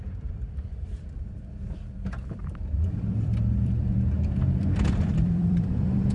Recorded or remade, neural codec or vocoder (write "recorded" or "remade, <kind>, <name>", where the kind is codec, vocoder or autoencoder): remade, vocoder, BigVGAN v2